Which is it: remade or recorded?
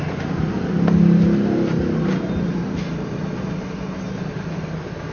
recorded